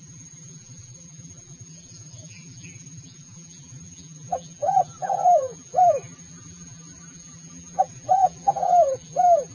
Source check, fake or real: fake